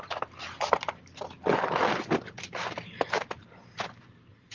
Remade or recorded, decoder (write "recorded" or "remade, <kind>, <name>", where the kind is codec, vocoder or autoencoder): remade, vocoder, BigVGAN v2